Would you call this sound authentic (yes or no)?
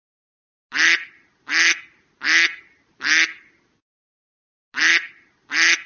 yes